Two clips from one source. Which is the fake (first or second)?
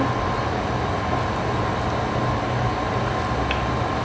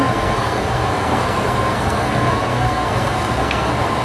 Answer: second